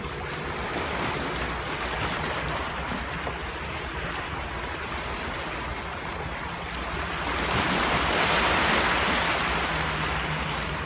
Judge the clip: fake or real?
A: real